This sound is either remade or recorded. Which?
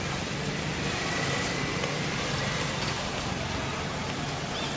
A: recorded